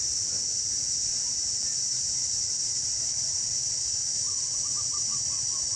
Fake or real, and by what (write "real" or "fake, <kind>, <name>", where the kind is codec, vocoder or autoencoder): fake, vocoder, BigVGAN v2